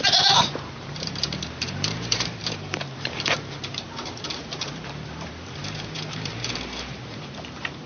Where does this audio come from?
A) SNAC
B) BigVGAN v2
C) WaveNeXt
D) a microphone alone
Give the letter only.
B